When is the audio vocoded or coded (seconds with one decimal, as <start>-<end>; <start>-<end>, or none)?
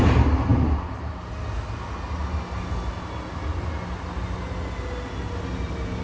none